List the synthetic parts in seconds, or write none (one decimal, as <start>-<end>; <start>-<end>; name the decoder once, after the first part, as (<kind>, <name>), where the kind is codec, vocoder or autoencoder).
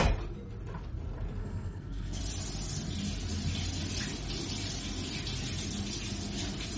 1.4-2.2 (codec, SNAC)